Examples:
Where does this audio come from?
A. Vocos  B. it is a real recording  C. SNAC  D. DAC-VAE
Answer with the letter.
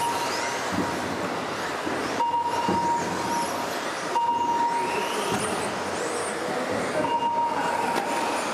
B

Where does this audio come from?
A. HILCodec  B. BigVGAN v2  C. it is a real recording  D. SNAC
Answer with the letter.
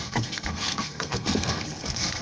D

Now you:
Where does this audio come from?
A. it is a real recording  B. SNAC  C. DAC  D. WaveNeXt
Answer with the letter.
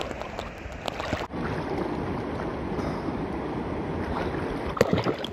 A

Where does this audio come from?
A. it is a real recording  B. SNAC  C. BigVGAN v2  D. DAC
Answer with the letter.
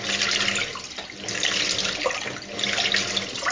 A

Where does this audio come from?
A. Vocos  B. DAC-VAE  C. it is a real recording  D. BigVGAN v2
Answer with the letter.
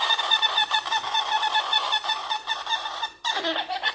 A